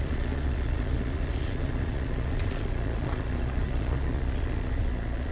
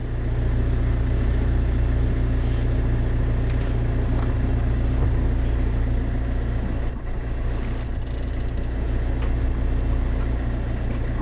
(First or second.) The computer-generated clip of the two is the first